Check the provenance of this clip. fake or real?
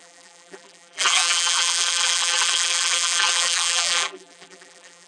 fake